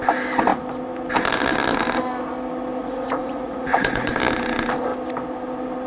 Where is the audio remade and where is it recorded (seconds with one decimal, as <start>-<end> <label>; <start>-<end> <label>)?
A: 0.0-2.8 recorded; 2.8-4.1 remade; 4.1-5.9 recorded